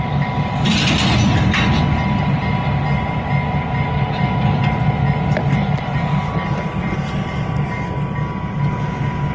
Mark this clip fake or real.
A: real